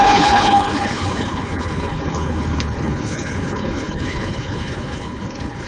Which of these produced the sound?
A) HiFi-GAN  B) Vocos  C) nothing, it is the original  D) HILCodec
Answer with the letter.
D